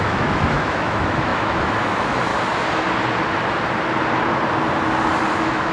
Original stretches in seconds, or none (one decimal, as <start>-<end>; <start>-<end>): 2.3-5.3